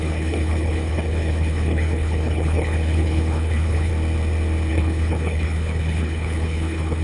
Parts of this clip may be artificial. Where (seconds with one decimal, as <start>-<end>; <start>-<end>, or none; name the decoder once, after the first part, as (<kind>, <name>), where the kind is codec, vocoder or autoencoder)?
0.0-3.9 (codec, HILCodec); 4.7-7.0